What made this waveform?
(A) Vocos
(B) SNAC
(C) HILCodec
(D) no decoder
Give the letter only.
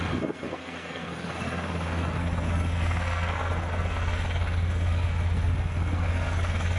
B